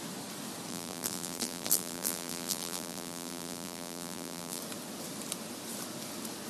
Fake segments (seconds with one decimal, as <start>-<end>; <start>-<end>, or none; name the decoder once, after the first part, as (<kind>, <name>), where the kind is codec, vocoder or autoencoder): 0.7-4.6 (vocoder, BigVGAN v2)